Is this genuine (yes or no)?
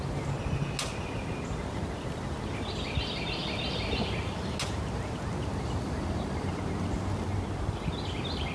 yes